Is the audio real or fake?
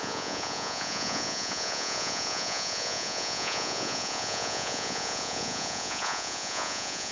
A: fake